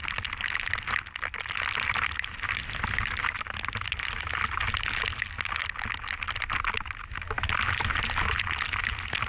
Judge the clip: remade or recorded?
recorded